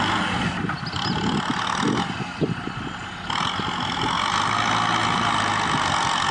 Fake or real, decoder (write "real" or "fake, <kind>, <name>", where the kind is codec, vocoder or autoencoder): real